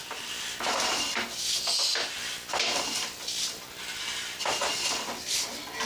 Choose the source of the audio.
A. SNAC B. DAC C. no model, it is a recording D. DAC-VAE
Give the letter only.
C